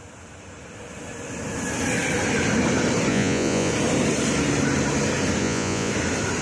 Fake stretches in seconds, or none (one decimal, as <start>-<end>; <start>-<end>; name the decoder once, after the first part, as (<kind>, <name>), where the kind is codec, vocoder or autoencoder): 3.1-3.7 (vocoder, Vocos); 5.4-5.9